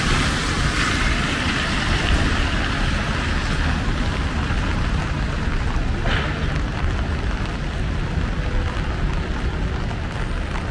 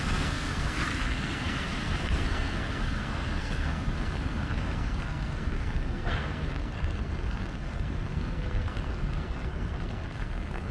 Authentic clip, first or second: first